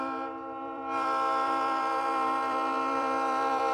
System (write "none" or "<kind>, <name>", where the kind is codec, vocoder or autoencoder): vocoder, BigVGAN v2